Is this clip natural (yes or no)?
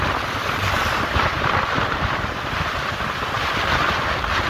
yes